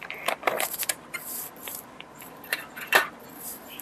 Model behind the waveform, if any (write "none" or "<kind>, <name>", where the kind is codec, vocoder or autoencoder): vocoder, BigVGAN v2